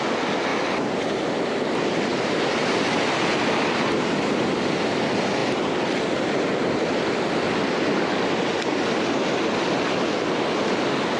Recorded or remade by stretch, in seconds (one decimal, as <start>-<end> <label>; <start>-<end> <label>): 0.0-11.2 recorded

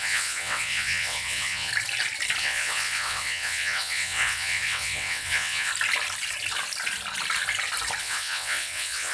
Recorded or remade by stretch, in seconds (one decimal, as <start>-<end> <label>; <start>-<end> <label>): 0.0-1.7 remade; 1.7-2.4 recorded; 2.4-5.7 remade; 5.7-8.0 recorded; 8.0-9.1 remade